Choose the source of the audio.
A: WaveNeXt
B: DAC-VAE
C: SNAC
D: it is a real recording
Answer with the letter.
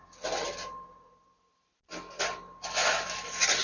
D